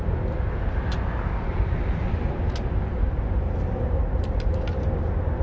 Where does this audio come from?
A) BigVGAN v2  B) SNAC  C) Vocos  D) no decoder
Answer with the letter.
D